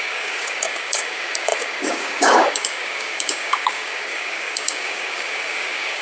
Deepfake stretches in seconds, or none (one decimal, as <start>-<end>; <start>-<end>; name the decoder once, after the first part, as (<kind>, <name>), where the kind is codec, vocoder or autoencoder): 0.0-6.0 (codec, DAC)